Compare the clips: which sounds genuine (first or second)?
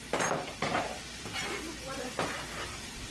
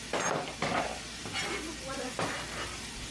second